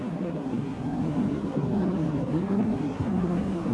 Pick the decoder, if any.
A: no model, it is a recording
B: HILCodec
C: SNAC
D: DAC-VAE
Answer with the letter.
C